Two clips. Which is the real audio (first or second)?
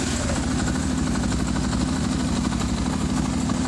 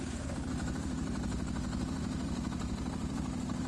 first